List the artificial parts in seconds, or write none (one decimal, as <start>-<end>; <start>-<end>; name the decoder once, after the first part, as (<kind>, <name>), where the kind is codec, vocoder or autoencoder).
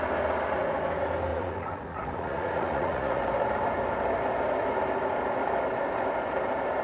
1.3-3.2 (vocoder, Vocos)